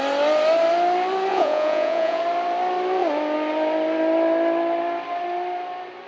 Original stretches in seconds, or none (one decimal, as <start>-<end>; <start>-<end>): 0.0-1.3; 2.2-6.1